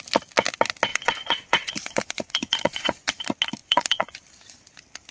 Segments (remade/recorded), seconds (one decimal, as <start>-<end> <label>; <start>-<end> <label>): 0.0-0.9 recorded; 0.9-3.1 remade; 3.1-3.6 recorded; 3.6-4.2 remade; 4.2-5.1 recorded